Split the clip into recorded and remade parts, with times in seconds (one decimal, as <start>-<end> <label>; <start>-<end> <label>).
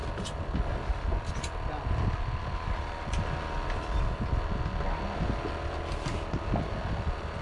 0.0-7.4 recorded